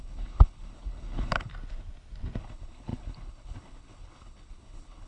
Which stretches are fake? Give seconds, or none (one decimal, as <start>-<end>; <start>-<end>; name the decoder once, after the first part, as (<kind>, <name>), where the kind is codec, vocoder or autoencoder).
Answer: 0.0-1.5 (codec, HILCodec); 2.4-5.1